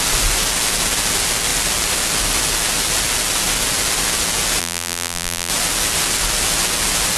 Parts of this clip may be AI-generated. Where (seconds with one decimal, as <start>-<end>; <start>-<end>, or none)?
4.6-5.5

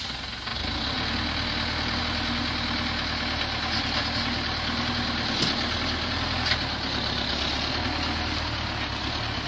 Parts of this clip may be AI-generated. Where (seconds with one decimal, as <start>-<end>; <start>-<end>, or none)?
none

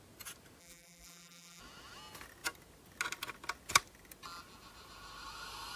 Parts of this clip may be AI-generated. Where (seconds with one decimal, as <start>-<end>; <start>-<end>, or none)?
0.6-1.6

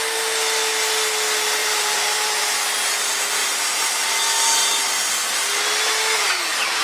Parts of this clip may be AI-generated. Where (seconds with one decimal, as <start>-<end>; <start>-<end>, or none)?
1.6-2.4; 3.4-4.1

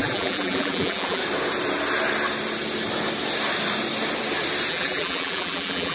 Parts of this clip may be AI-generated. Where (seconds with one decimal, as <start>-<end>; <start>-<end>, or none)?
0.0-1.2; 4.7-5.9

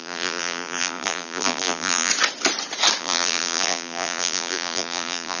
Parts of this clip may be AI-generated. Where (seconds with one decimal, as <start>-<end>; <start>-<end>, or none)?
0.0-2.1; 3.0-5.4

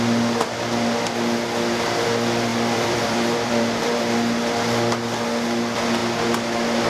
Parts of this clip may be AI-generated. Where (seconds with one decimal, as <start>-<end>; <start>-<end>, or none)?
2.5-4.0

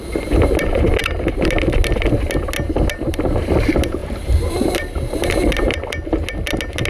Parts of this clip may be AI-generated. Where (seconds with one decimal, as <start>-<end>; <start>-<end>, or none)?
4.0-4.9